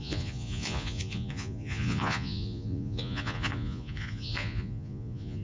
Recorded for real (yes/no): no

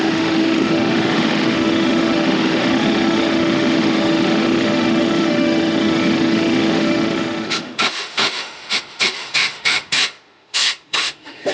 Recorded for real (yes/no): no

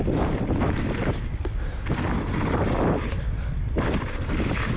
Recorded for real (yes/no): yes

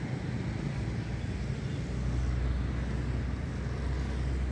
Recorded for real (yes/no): yes